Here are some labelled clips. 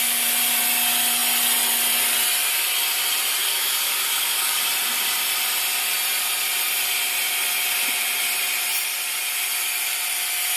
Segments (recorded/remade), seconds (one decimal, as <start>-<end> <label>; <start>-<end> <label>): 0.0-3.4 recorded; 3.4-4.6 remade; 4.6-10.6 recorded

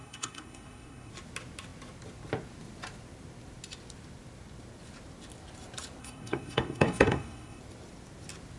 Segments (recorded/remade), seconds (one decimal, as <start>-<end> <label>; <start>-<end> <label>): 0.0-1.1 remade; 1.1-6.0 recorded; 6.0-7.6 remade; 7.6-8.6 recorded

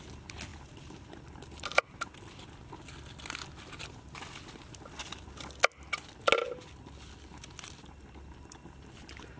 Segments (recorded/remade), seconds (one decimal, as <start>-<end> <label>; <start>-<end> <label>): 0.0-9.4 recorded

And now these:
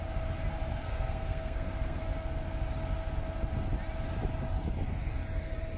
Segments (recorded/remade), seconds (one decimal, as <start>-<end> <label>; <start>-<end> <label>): 0.0-0.7 recorded; 0.7-2.0 remade; 2.0-5.8 recorded

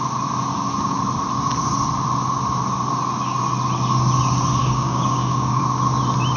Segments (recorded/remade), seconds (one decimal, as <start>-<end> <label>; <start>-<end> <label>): 0.0-4.6 recorded; 4.6-5.6 remade; 5.6-6.4 recorded

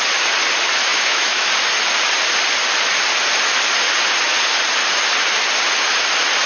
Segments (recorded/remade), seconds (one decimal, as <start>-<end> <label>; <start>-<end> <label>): 0.0-0.9 recorded; 0.9-1.5 remade; 1.5-6.5 recorded

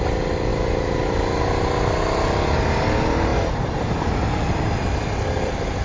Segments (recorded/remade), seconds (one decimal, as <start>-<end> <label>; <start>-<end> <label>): 0.0-5.8 recorded